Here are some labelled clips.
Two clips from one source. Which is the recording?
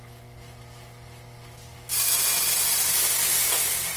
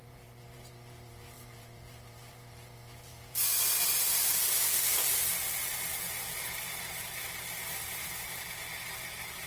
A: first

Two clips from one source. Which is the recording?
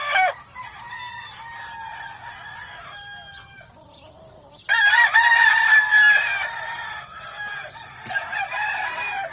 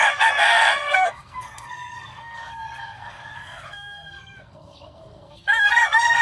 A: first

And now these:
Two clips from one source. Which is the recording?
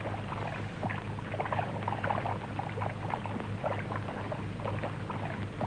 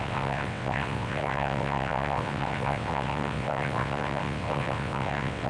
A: first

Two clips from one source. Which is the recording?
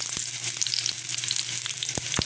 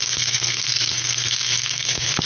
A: first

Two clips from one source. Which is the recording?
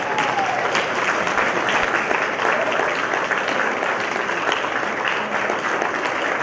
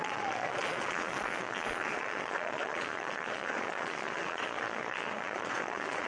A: first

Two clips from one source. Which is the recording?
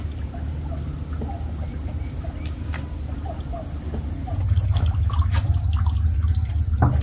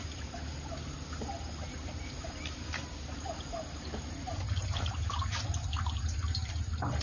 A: first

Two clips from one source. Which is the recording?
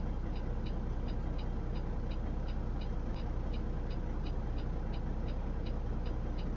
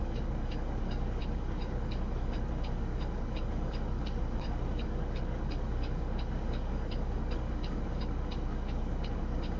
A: first